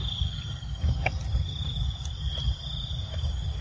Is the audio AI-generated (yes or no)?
no